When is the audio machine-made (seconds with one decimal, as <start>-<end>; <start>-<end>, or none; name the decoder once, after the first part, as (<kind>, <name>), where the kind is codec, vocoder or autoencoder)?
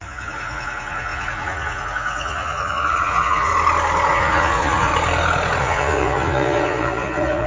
0.0-3.5 (vocoder, Vocos); 4.1-4.9; 5.6-7.5